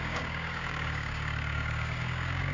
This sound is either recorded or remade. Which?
remade